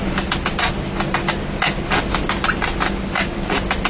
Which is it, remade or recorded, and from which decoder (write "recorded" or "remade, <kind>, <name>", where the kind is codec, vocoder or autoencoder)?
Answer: recorded